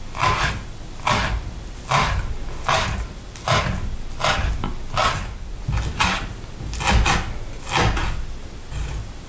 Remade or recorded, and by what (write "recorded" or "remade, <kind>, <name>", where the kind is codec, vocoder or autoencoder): recorded